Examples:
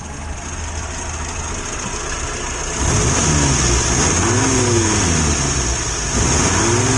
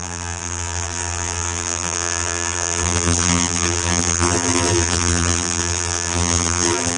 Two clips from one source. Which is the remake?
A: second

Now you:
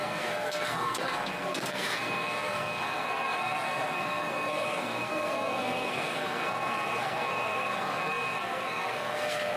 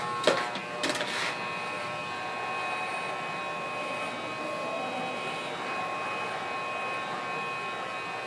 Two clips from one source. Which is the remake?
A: first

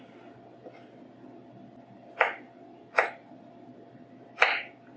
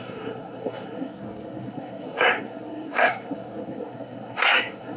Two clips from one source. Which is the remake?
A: second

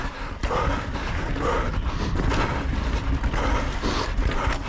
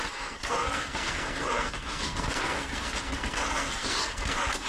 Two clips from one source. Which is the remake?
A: second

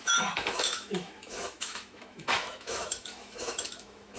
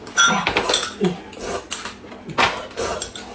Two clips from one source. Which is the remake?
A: first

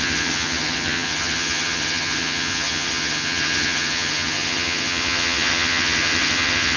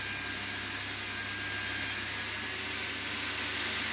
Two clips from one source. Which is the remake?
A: first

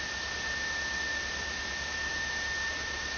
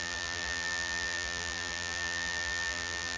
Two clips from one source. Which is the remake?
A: second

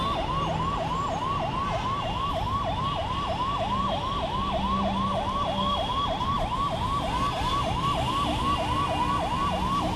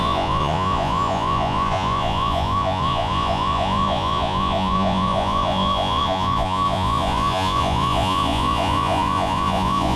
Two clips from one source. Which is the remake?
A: second